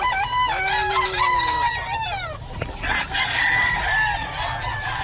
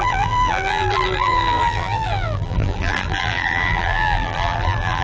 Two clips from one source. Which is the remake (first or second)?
second